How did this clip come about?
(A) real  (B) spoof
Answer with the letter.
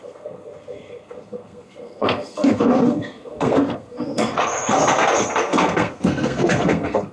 B